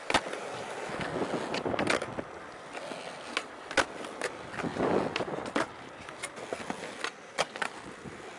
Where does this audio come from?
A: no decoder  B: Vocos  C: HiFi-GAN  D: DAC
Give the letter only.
A